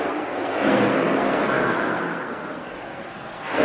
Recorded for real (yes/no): no